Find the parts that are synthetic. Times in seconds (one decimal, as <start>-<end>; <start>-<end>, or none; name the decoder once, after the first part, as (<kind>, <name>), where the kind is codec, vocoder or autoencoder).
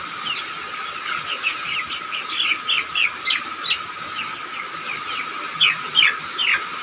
none